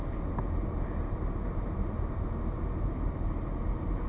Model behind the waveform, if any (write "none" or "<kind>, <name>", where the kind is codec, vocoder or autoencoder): none